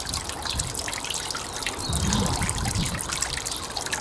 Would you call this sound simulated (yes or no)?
no